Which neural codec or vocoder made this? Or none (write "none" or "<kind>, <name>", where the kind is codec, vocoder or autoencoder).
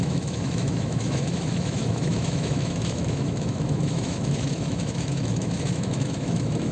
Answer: autoencoder, DAC-VAE